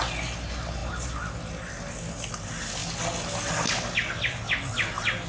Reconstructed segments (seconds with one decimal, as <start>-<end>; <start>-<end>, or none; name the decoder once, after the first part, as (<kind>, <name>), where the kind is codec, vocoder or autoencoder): none